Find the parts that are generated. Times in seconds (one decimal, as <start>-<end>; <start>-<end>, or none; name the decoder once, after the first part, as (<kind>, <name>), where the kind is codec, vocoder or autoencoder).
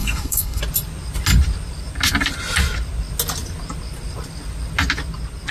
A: 0.0-0.6 (codec, SNAC)